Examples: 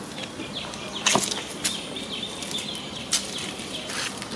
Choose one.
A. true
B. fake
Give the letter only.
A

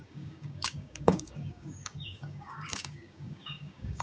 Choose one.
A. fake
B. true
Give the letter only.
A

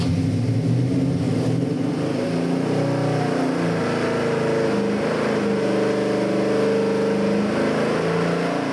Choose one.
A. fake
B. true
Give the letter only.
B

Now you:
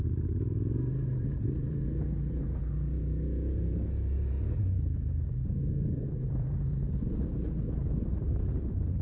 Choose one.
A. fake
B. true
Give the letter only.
A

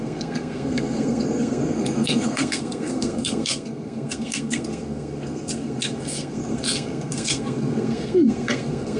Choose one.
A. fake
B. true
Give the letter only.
A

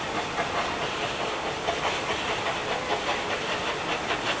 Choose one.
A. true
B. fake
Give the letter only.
A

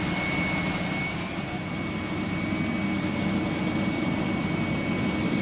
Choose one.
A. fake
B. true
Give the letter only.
B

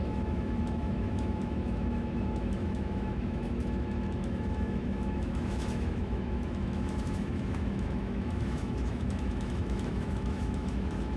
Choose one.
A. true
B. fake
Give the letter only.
B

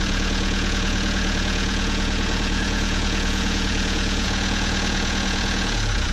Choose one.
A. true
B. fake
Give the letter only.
B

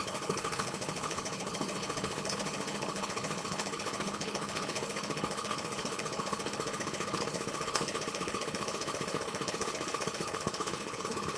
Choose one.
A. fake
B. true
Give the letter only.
A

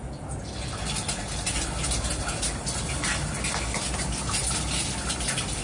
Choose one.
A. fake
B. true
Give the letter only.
B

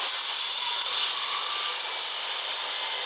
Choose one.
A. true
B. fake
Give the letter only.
A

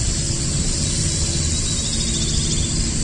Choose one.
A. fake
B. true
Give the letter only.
B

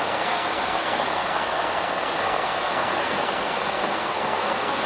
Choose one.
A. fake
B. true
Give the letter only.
A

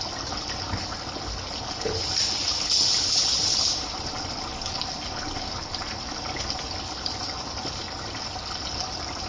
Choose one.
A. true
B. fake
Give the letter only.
A